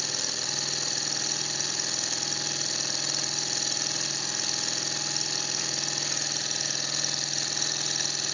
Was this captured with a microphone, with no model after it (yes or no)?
yes